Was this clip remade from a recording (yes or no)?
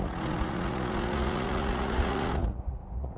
yes